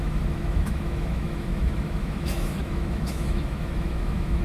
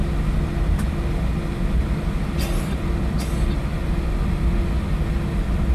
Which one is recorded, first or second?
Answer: second